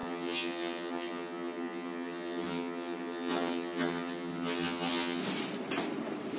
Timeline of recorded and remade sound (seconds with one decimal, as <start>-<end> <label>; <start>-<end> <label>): 0.0-5.2 remade; 5.2-6.4 recorded